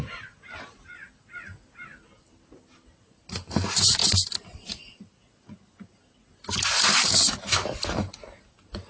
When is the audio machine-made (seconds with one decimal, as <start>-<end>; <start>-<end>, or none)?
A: none